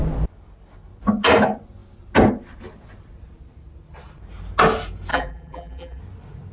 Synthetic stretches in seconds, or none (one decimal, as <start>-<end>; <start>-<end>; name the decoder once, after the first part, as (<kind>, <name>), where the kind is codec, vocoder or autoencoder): 5.1-6.0 (vocoder, BigVGAN v2)